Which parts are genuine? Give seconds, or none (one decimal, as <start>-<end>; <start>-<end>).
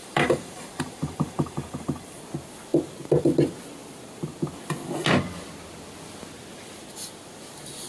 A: 2.2-7.9